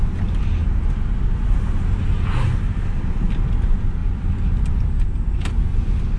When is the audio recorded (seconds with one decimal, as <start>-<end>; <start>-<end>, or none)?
0.0-6.2